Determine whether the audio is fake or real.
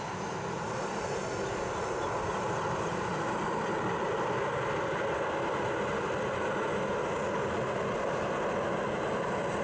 real